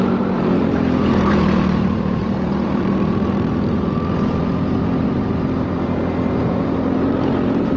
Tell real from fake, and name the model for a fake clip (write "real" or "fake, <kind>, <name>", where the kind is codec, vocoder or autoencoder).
fake, vocoder, BigVGAN v2